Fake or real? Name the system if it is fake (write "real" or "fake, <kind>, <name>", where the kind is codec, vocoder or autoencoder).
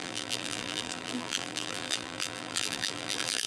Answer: fake, vocoder, BigVGAN v2